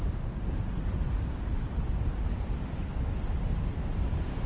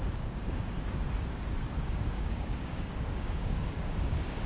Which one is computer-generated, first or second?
second